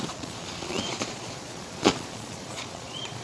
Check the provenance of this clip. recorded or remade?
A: remade